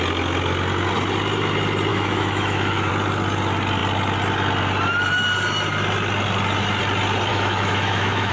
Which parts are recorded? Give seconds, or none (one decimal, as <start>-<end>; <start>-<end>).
0.0-1.9; 2.9-7.3